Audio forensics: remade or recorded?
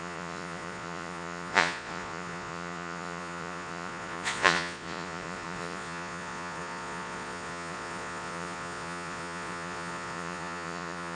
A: remade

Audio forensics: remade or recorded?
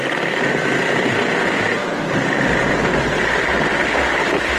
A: recorded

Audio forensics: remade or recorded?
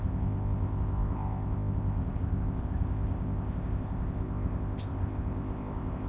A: remade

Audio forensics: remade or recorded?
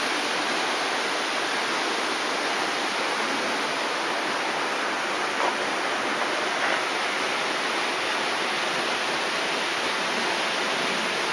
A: recorded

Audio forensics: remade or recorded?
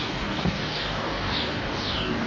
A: remade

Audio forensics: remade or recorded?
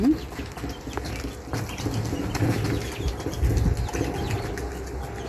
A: recorded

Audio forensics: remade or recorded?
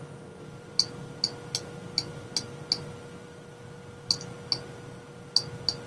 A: recorded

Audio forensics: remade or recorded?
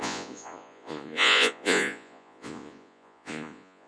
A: remade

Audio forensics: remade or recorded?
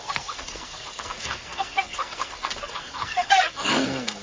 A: remade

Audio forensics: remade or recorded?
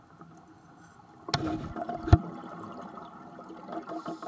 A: recorded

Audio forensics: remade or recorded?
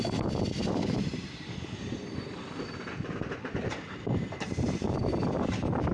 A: remade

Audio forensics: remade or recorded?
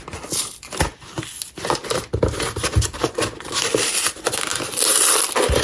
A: remade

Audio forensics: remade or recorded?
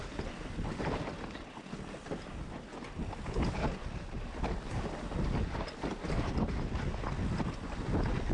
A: recorded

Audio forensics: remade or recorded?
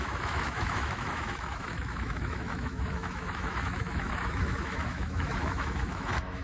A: remade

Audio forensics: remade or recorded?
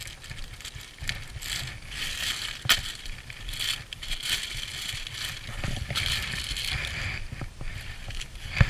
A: recorded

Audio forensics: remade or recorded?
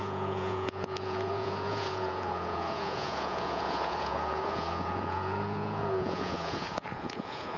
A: remade